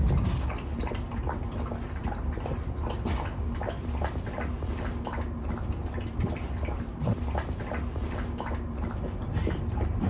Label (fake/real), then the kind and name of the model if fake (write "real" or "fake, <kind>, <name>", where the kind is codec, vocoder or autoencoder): real